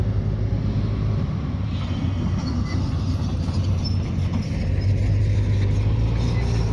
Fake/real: real